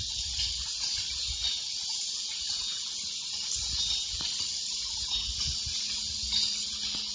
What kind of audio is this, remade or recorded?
recorded